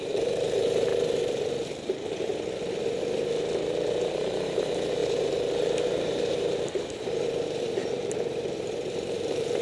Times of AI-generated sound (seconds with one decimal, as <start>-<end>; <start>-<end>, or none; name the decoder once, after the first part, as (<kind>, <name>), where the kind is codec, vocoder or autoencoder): 0.0-0.9 (vocoder, BigVGAN v2); 1.7-2.3; 3.9-9.6